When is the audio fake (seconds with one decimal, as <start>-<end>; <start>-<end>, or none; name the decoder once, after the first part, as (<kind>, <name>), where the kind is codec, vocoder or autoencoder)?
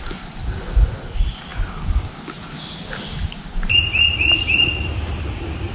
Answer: none